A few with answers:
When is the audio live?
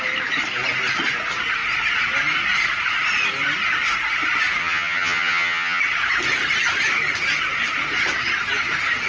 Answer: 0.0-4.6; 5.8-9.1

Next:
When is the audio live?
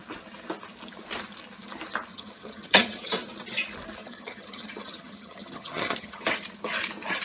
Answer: 0.0-2.1; 3.1-4.0; 6.2-7.2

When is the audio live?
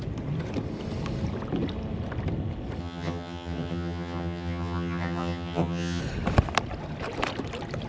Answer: 0.0-2.8; 6.0-7.9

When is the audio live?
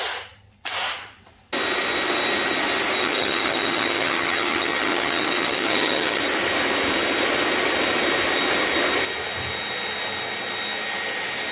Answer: 0.0-3.0; 6.2-11.5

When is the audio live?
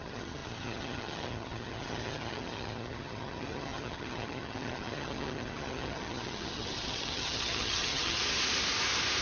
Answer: 8.2-9.2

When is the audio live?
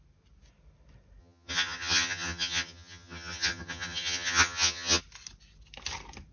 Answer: 0.0-1.2; 5.0-6.3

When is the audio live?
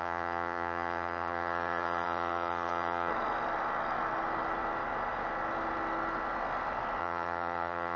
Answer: 3.1-7.0